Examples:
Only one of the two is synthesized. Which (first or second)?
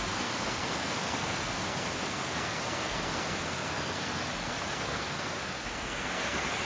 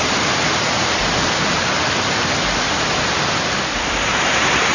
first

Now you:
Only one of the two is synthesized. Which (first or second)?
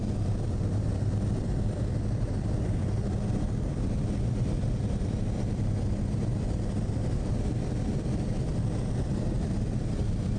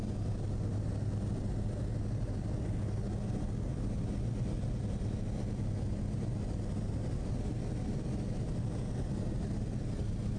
first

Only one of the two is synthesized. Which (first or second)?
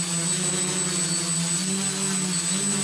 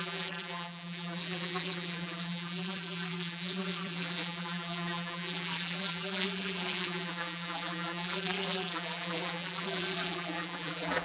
second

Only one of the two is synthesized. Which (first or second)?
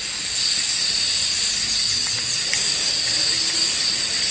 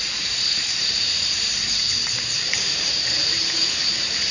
second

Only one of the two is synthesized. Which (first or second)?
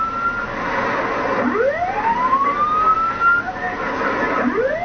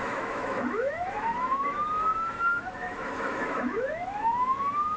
second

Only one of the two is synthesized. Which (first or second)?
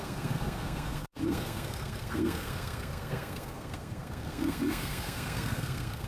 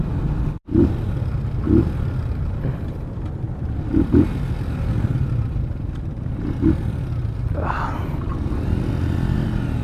first